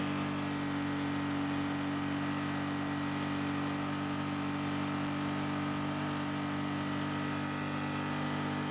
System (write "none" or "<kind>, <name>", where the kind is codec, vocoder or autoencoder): none